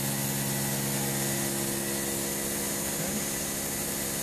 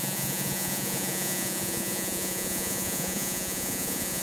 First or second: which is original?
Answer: first